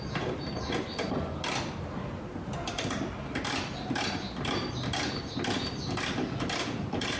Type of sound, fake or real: real